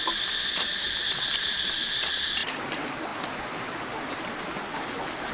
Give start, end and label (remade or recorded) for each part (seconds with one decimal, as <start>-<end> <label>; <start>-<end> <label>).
0.0-5.3 recorded

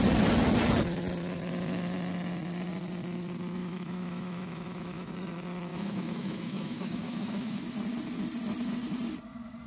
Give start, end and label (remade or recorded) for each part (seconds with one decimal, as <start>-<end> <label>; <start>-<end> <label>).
0.0-3.6 recorded; 3.6-5.1 remade; 5.1-5.7 recorded; 5.7-7.6 remade; 7.6-9.7 recorded

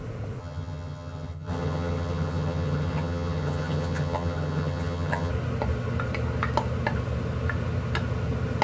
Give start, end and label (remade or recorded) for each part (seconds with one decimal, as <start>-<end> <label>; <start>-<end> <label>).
0.0-0.4 recorded; 0.4-5.3 remade; 5.3-8.6 recorded

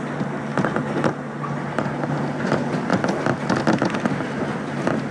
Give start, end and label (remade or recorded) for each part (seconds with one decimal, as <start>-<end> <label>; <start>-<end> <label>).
0.0-5.1 recorded